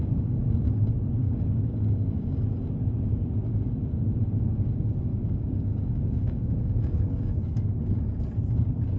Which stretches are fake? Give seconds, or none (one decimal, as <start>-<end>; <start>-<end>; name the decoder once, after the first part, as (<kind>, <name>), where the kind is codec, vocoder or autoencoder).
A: 1.2-2.4 (codec, DAC); 5.1-7.4